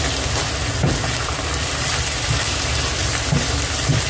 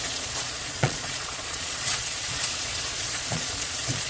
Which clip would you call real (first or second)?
first